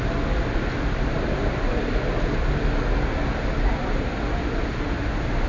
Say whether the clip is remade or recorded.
recorded